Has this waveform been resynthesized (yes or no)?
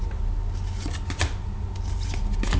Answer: no